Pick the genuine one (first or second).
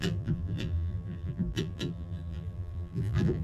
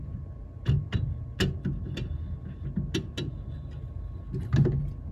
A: second